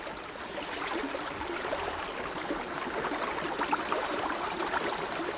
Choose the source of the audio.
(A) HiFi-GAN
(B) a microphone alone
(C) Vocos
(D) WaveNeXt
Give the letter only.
B